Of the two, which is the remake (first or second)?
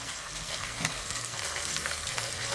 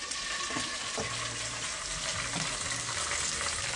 first